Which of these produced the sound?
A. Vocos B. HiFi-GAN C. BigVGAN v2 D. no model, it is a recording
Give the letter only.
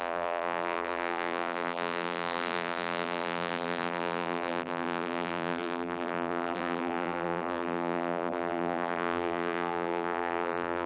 C